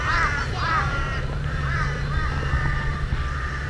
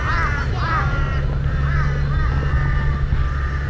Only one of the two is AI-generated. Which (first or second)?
first